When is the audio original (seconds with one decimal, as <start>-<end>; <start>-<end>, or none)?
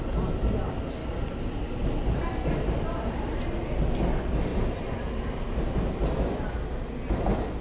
0.0-7.6